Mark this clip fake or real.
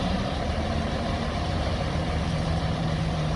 fake